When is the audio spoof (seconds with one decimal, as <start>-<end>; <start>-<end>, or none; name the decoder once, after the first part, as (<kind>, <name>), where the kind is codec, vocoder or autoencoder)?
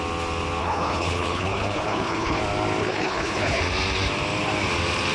0.6-2.4 (codec, HILCodec); 2.8-3.6